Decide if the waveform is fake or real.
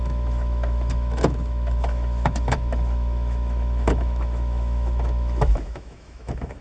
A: fake